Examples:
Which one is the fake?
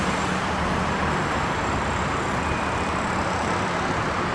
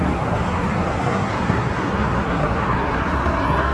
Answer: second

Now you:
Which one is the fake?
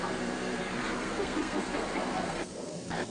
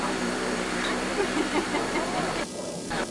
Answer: first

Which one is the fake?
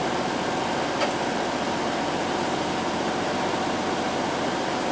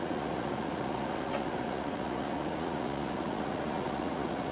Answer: second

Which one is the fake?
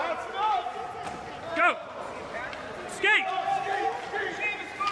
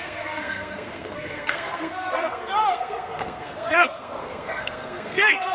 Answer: second